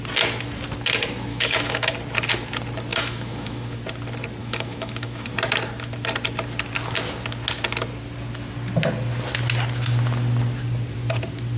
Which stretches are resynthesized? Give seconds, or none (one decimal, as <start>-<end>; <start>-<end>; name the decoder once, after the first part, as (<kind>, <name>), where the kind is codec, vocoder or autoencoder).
1.3-1.9 (autoencoder, DAC-VAE); 2.9-3.8; 4.4-5.3